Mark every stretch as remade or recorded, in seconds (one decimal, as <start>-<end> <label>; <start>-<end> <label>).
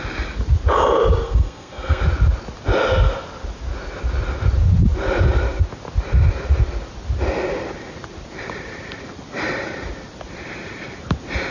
0.0-1.2 recorded; 1.2-2.0 remade; 2.0-11.5 recorded